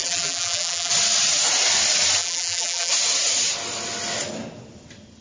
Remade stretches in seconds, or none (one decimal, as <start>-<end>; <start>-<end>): 0.0-0.9; 2.2-2.9